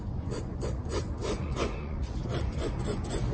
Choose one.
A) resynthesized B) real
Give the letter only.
A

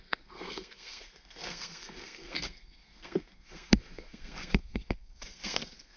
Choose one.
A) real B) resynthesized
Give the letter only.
B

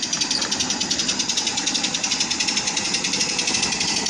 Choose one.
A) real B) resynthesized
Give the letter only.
B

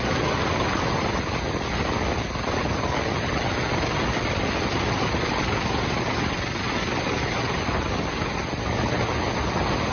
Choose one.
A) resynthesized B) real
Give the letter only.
B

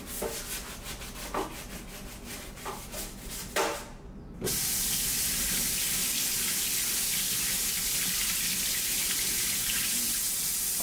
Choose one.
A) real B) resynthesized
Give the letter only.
A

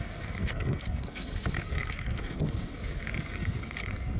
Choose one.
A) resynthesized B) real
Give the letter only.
A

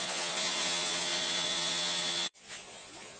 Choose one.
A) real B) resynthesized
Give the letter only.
B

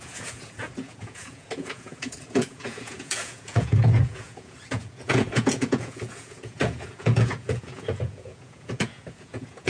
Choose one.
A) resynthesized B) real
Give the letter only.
A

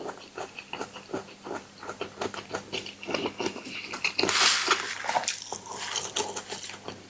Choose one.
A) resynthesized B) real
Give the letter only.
B